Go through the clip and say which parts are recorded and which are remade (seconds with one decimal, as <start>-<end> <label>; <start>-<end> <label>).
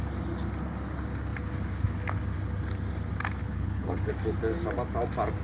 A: 0.0-3.4 recorded; 3.4-4.1 remade; 4.1-5.4 recorded